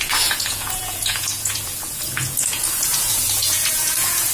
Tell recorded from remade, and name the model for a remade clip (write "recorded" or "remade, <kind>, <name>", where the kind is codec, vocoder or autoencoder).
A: remade, vocoder, Vocos